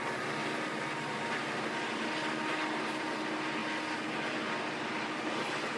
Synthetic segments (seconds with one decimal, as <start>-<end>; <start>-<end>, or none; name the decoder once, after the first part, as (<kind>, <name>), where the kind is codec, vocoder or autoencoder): none